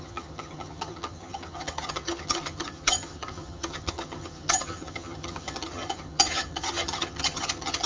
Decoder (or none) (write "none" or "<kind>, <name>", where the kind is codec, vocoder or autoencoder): vocoder, HiFi-GAN